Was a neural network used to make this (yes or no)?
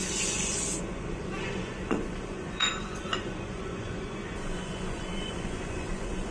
yes